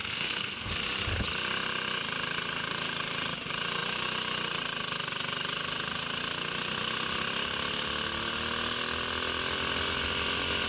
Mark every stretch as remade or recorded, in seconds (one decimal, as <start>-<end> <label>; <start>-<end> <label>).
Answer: 0.0-0.7 remade; 0.7-10.7 recorded